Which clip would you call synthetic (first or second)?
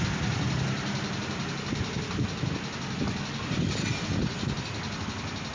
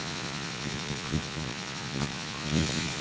second